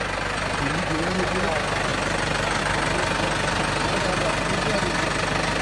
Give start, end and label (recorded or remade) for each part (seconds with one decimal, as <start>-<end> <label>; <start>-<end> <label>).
0.0-5.6 recorded